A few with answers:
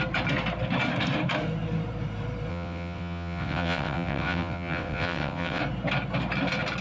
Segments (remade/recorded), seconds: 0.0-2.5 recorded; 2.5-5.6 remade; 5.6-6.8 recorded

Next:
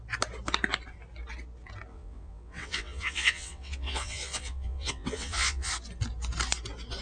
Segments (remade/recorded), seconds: 0.0-1.9 recorded; 1.9-5.7 remade; 5.7-7.0 recorded

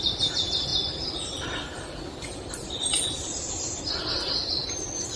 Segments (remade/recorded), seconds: 0.0-5.2 recorded